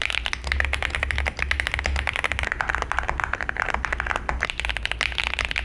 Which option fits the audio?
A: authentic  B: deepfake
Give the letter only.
A